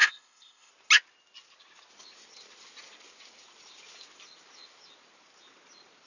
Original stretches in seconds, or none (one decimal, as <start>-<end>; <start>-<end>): 0.7-6.1